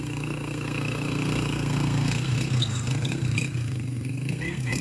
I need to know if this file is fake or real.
fake